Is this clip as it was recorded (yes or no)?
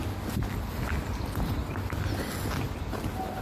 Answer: yes